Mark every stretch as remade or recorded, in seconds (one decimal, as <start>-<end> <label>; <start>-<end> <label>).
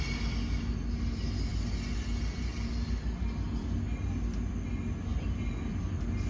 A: 0.0-6.3 recorded